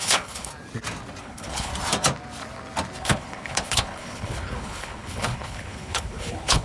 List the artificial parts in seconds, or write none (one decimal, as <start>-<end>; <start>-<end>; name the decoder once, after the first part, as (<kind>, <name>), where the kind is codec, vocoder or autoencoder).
0.0-0.5 (codec, HILCodec); 1.2-1.7; 3.0-6.6